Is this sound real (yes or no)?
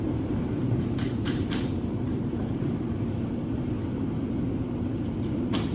no